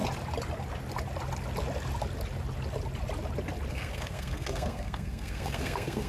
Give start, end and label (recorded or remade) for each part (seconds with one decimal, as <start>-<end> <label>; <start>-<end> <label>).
0.0-3.7 recorded; 3.7-6.1 remade